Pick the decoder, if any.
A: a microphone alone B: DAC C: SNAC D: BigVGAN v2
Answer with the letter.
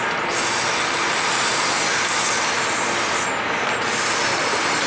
A